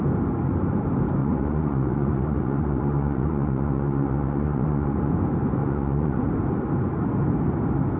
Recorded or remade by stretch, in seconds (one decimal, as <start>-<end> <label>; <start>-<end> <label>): 0.0-1.2 recorded; 1.2-5.1 remade; 5.1-5.6 recorded; 5.6-6.3 remade; 6.3-8.0 recorded